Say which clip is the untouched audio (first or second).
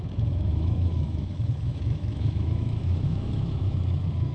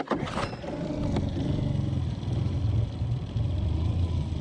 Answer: second